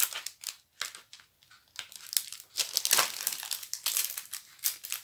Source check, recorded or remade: recorded